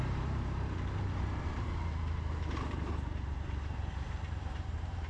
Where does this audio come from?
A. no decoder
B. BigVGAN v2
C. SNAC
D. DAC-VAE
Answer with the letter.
B